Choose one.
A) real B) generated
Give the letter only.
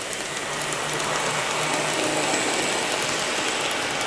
A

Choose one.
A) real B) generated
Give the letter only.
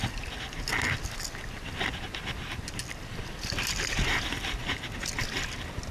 A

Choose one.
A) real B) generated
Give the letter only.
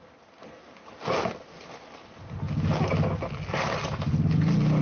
A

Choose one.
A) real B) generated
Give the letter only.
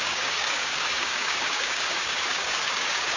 B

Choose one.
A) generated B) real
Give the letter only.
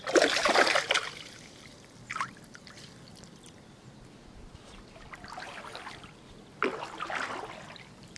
B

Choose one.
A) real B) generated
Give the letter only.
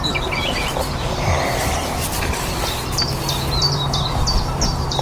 B